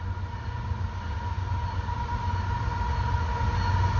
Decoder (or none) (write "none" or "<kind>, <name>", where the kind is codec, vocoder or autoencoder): none